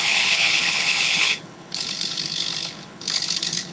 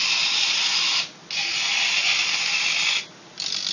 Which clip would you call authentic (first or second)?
second